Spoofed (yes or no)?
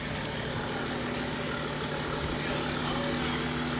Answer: no